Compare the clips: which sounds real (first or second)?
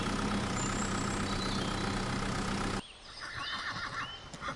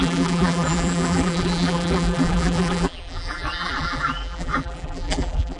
first